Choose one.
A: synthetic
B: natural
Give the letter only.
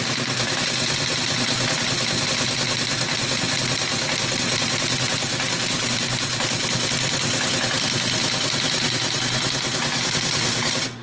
B